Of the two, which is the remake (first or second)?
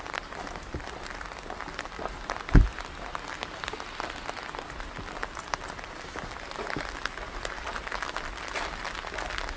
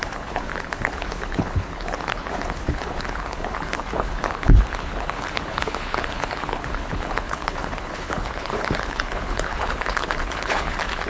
second